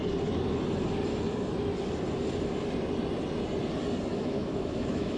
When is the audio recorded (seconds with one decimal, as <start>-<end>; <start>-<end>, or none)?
0.0-4.1